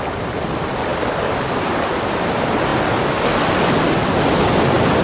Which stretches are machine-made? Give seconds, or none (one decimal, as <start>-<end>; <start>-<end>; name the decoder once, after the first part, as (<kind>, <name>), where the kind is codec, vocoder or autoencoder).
none